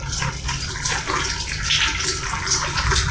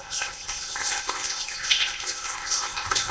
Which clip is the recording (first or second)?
first